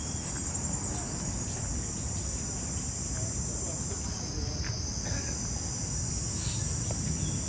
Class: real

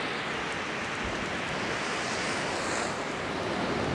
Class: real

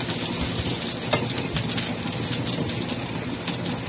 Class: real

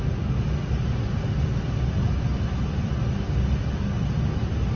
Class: real